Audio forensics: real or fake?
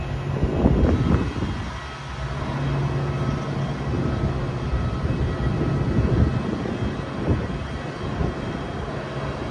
real